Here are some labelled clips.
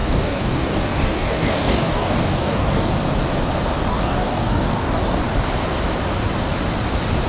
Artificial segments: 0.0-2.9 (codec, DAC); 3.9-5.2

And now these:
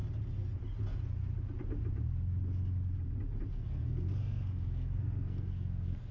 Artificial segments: 3.5-6.1 (codec, SNAC)

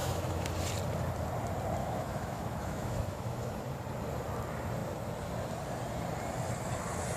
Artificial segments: 0.0-0.5 (autoencoder, DAC-VAE); 1.8-3.6

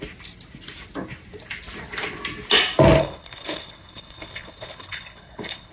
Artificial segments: 3.0-5.7 (codec, HILCodec)

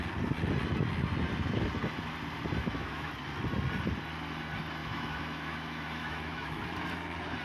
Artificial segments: 2.6-3.1 (autoencoder, DAC-VAE); 4.8-6.6

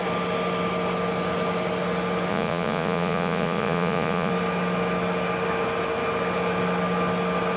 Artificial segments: 2.3-4.3 (vocoder, Vocos)

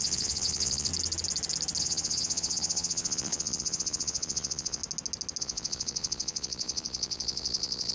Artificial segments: 0.0-0.9 (vocoder, Vocos); 1.8-4.8; 5.4-7.9